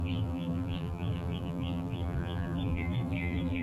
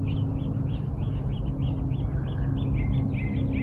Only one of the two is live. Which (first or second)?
second